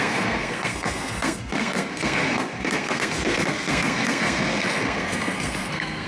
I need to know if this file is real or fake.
fake